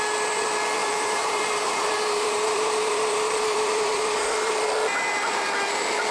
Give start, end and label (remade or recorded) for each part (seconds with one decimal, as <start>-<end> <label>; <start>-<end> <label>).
0.0-0.8 recorded; 0.8-4.5 remade; 4.5-6.1 recorded